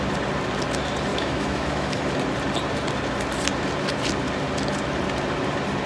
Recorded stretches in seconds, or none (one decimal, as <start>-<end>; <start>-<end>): 0.0-1.1; 2.1-5.9